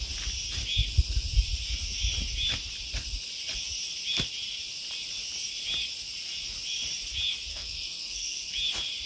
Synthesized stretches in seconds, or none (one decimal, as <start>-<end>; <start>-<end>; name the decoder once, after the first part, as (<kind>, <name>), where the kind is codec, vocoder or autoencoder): 7.5-8.5 (codec, SNAC)